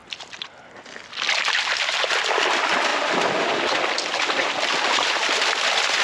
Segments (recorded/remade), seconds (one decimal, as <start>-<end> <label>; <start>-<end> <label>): 0.0-6.0 recorded